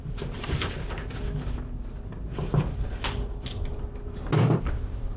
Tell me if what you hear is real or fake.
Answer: real